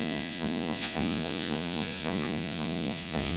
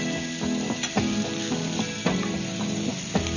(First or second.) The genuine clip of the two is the second